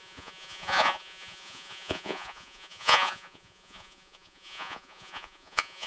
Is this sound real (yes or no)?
no